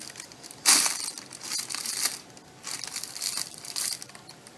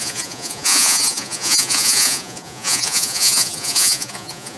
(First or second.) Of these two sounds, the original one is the first